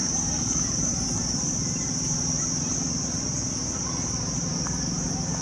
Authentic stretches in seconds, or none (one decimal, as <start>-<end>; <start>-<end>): 1.9-5.4

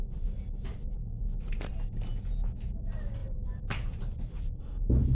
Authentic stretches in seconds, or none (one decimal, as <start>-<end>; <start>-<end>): 0.0-3.2; 4.6-5.1

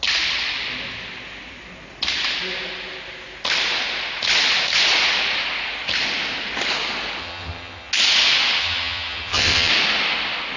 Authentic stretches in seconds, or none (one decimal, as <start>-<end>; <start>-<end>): 0.0-7.2; 7.9-8.6; 9.7-10.6

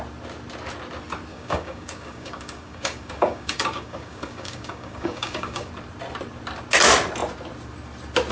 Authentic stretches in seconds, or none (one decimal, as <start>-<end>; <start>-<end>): 0.0-1.3; 5.7-8.3